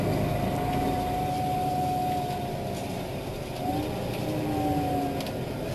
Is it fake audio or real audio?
fake